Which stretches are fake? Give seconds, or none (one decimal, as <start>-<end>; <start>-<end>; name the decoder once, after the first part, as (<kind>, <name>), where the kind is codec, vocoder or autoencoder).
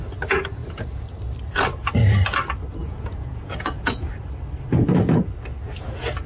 2.8-4.1 (vocoder, Vocos)